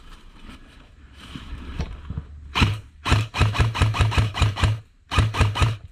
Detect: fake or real fake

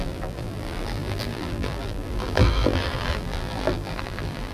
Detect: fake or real fake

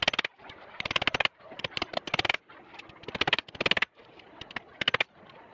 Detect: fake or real real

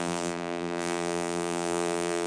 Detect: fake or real fake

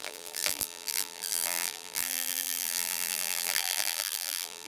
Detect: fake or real fake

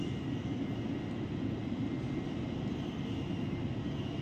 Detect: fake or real real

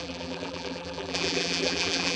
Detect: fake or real fake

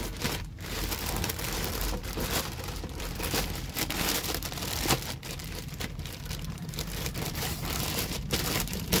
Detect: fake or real fake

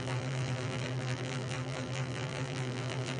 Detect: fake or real fake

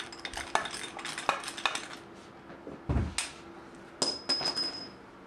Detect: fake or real real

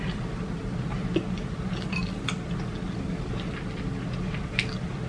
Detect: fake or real real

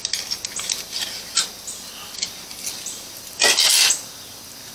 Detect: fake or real real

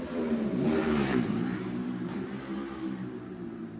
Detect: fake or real fake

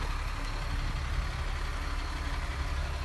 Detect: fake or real real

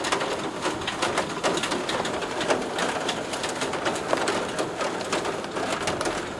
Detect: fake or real real